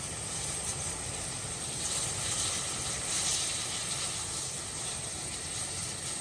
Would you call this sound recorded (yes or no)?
yes